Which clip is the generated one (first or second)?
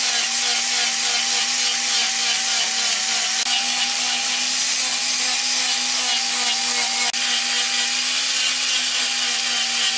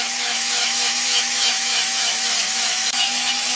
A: second